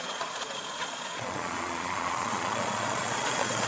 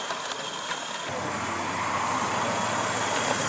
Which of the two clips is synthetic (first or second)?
first